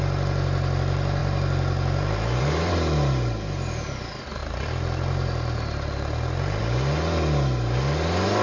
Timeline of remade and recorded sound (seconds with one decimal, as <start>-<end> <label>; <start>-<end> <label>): 0.0-8.4 recorded

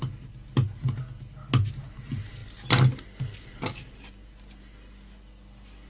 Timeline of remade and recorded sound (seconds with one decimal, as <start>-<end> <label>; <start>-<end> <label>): 0.0-5.9 recorded

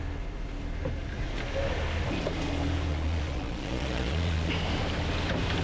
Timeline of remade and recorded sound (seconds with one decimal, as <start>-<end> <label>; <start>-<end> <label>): 0.0-2.9 recorded; 2.9-4.5 remade; 4.5-5.6 recorded